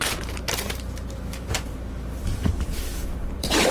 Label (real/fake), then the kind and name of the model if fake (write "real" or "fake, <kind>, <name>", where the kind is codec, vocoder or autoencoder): fake, vocoder, BigVGAN v2